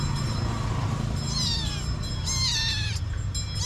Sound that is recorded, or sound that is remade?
recorded